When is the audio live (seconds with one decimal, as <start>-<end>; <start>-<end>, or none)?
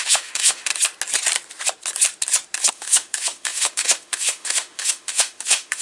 0.7-2.7